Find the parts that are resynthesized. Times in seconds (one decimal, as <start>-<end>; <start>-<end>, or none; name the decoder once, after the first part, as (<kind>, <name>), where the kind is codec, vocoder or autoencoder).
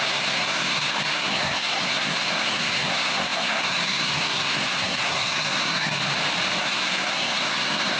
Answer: 0.0-6.0 (codec, SNAC); 6.6-8.0